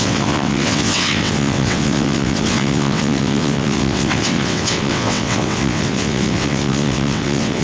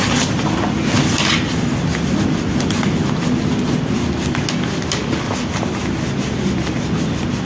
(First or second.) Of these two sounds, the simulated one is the first